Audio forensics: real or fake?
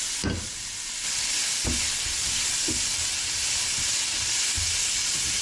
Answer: real